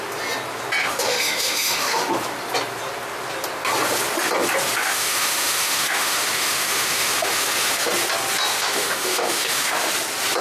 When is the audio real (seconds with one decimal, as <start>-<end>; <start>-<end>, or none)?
0.0-0.8; 2.1-4.8; 7.9-8.5; 9.9-10.4